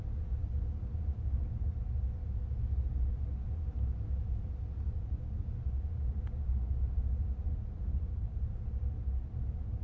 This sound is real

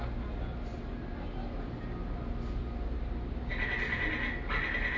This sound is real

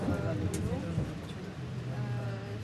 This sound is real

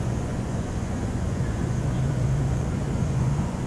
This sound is fake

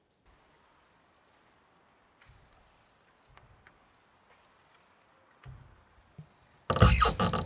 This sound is real